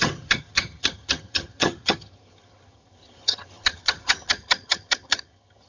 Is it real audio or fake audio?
fake